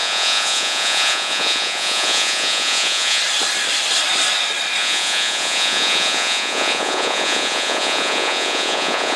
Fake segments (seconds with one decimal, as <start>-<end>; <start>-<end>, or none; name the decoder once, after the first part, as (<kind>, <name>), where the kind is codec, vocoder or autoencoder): 0.0-3.2 (vocoder, Vocos); 4.8-9.2